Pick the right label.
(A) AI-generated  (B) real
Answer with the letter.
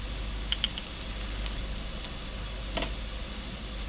B